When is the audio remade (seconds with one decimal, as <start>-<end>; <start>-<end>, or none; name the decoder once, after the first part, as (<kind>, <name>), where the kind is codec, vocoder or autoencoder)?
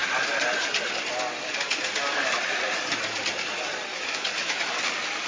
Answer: 3.9-4.7 (autoencoder, DAC-VAE)